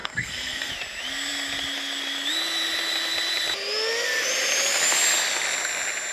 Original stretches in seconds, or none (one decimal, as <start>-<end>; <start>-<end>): 0.7-6.1